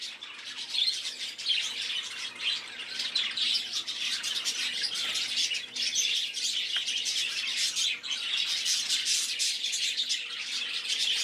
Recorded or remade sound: recorded